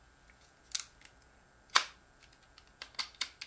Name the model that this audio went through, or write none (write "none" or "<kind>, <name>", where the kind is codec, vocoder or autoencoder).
none